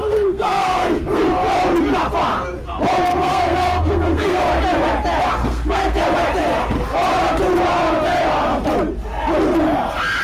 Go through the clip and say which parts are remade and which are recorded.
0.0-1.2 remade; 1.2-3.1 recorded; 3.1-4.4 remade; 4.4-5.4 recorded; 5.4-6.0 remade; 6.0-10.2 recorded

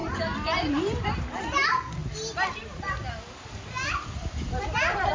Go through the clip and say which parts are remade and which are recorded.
0.0-5.1 recorded